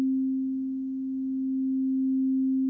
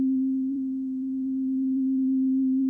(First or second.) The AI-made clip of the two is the second